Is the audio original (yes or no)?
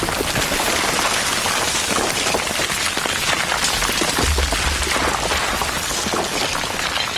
yes